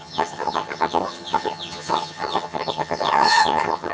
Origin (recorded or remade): remade